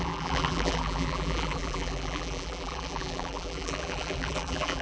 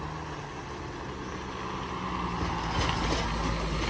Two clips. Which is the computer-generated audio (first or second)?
first